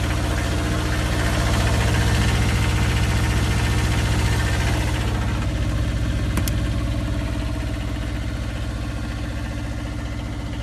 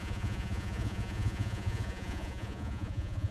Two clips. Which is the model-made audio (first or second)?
second